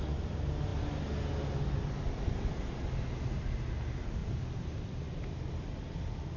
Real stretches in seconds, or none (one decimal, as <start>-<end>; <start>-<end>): 0.0-6.4